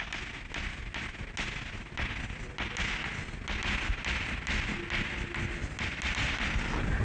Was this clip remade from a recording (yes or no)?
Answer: no